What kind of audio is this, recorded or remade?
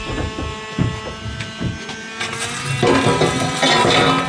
recorded